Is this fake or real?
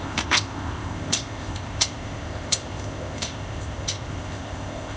fake